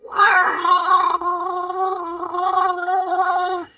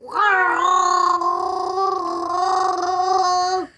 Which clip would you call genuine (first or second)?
second